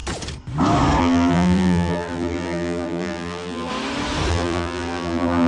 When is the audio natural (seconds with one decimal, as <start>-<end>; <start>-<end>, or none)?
0.0-1.0; 3.7-4.3